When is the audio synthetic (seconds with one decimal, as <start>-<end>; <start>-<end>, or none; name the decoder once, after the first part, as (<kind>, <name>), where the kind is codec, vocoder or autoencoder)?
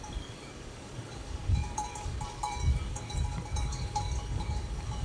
0.0-5.0 (codec, DAC)